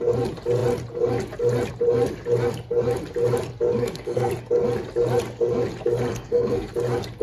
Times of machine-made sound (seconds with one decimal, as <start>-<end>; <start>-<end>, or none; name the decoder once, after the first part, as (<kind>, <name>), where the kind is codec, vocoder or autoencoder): 3.7-4.3 (codec, SNAC); 6.1-6.7